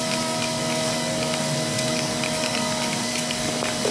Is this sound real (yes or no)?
no